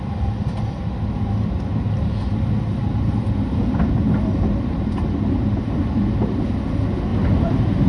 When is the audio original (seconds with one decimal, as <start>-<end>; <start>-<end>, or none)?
0.0-7.1